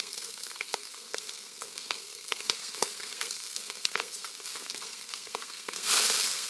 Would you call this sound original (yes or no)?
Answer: no